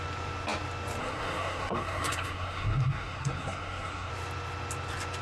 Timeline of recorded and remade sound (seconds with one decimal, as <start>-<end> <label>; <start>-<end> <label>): 0.0-1.0 recorded; 1.0-4.1 remade; 4.1-5.2 recorded